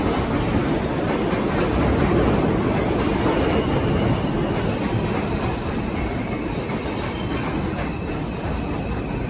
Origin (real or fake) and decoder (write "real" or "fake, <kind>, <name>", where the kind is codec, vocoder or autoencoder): real